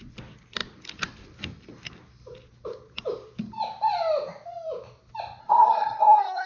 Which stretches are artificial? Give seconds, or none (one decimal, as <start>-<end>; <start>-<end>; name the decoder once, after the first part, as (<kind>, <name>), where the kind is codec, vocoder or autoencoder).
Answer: 5.4-6.5 (codec, SNAC)